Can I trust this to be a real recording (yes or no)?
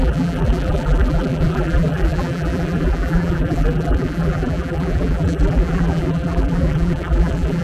no